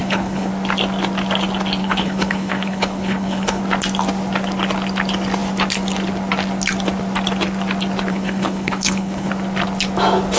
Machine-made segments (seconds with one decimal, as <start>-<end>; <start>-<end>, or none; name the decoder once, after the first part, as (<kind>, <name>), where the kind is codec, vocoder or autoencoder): 0.0-0.5 (codec, HILCodec); 1.8-3.6; 8.1-9.3